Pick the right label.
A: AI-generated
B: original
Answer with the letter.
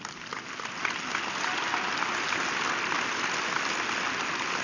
B